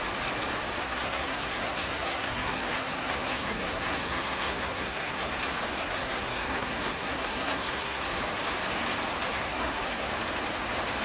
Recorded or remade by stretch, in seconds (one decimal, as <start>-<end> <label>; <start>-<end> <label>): 0.0-0.8 recorded; 0.8-5.3 remade; 5.3-5.8 recorded; 5.8-8.2 remade; 8.2-9.3 recorded; 9.3-10.1 remade; 10.1-11.0 recorded